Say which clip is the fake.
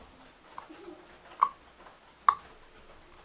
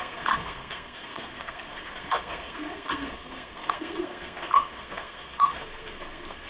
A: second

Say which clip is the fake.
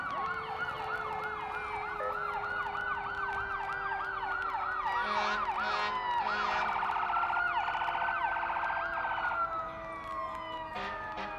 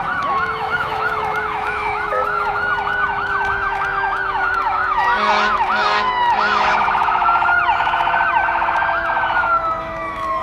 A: second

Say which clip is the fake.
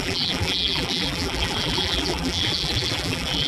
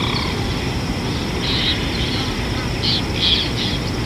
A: first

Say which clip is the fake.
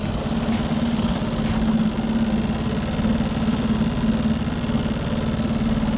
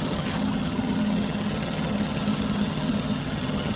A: second